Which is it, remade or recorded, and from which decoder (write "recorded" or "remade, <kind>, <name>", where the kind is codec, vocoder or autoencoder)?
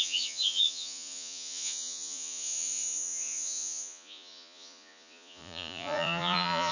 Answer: remade, vocoder, Vocos